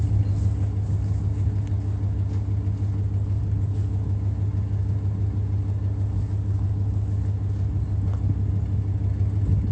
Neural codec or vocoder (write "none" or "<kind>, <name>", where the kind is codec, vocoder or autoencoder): none